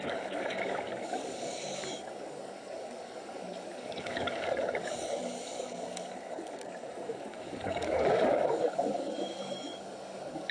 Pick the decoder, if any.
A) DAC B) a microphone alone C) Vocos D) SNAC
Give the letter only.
A